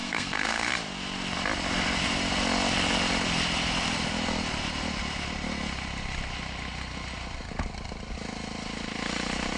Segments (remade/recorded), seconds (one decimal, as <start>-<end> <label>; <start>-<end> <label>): 0.0-0.7 remade; 0.7-9.6 recorded